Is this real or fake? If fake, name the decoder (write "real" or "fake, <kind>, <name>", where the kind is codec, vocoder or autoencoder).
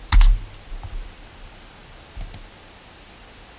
real